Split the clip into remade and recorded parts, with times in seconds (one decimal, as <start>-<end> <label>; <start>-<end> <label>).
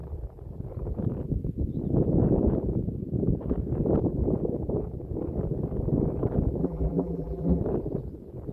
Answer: 0.0-6.6 recorded; 6.6-7.6 remade; 7.6-8.5 recorded